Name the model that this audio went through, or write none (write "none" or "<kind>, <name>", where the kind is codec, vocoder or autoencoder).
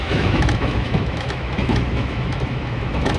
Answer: autoencoder, DAC-VAE